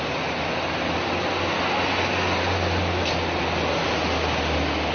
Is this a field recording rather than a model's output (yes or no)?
yes